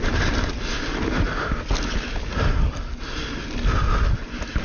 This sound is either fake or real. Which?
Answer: real